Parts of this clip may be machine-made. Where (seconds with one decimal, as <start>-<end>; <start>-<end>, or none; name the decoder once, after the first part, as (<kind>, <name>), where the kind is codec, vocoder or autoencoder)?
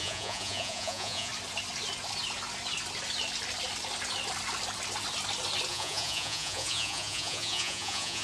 0.0-1.3 (vocoder, Vocos); 5.7-8.2